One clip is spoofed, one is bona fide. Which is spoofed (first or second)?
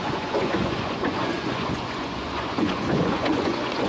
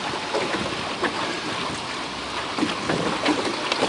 first